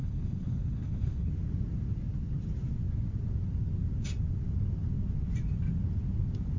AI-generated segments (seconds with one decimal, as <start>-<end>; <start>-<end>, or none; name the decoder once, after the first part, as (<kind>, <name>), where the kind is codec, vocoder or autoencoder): 0.0-1.3 (codec, HILCodec)